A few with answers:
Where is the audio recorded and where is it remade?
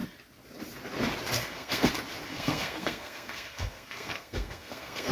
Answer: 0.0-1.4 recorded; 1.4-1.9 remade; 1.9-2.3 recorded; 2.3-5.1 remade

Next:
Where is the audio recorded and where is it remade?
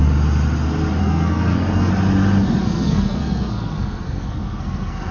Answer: 0.0-1.0 recorded; 1.0-1.9 remade; 1.9-2.6 recorded; 2.6-5.1 remade